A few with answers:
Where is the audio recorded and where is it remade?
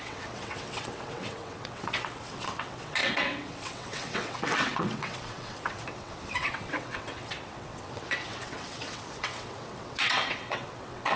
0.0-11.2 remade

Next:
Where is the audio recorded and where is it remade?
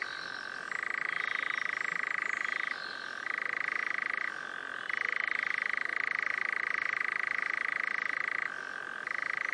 0.0-9.5 recorded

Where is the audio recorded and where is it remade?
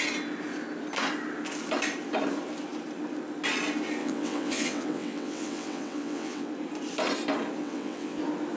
0.0-4.0 recorded; 4.0-6.5 remade; 6.5-7.6 recorded; 7.6-8.2 remade; 8.2-8.6 recorded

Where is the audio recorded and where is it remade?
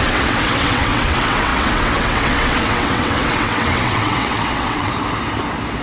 0.0-4.9 remade; 4.9-5.8 recorded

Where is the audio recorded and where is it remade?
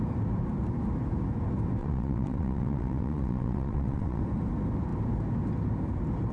0.0-1.8 recorded; 1.8-4.2 remade; 4.2-6.3 recorded